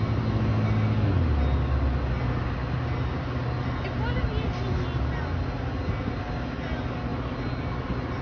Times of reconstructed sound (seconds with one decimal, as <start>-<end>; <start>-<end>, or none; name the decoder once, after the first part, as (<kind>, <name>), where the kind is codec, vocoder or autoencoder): none